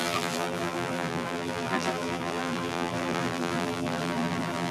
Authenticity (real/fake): fake